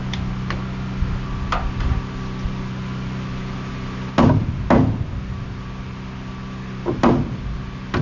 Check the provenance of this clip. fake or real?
real